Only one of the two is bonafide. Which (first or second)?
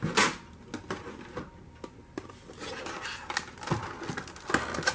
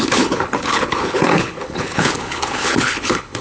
first